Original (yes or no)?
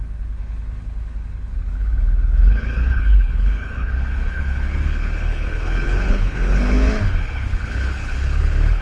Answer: no